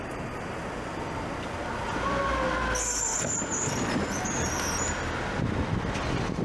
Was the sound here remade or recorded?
recorded